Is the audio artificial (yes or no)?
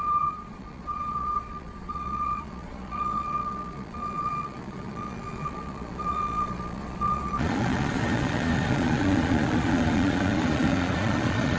yes